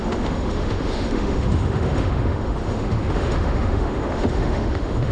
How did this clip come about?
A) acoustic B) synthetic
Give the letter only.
B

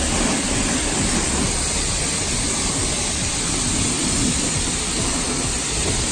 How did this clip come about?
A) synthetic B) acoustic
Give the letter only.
B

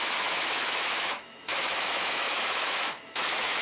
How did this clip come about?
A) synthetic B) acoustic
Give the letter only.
A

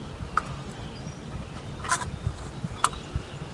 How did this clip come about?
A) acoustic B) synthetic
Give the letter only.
A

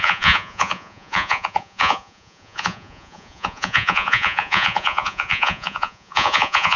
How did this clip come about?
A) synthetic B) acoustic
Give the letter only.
A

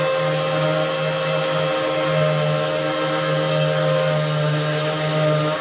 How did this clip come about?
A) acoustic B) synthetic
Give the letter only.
A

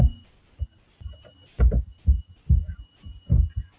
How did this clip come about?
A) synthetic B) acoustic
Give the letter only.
B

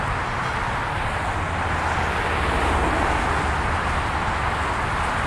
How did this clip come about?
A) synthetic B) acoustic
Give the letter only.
B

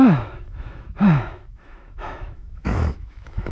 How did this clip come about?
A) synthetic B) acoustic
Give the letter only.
A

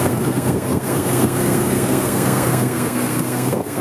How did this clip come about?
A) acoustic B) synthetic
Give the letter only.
B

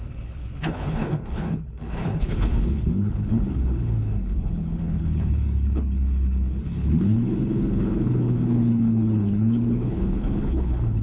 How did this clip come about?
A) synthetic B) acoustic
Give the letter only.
A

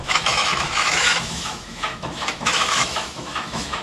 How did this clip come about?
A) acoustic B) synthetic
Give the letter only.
B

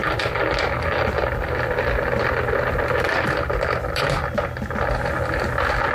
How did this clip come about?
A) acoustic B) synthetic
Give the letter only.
A